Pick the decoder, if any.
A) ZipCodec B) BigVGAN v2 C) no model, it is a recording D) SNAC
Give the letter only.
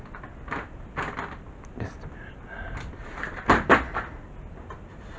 C